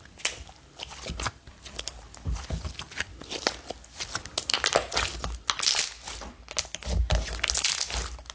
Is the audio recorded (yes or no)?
yes